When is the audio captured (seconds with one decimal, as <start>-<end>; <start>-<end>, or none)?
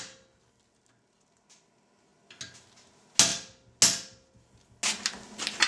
0.0-5.7